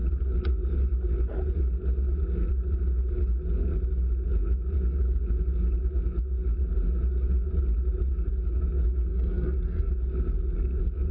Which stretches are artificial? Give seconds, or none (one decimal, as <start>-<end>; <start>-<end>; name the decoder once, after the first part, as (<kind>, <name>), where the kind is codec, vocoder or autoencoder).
9.1-9.9 (codec, SNAC)